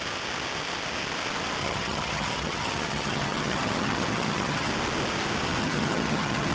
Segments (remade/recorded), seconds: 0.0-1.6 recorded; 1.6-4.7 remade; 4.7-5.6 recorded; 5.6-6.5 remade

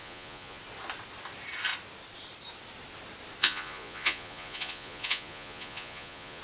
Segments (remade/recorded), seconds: 0.0-0.6 remade; 0.6-3.4 recorded; 3.4-6.4 remade

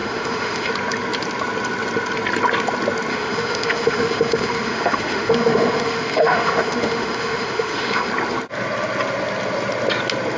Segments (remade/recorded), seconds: 0.0-0.7 remade; 0.7-3.1 recorded; 3.1-8.1 remade; 8.1-10.4 recorded